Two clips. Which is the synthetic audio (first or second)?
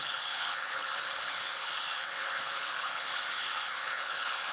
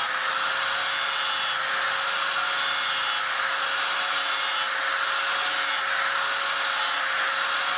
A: first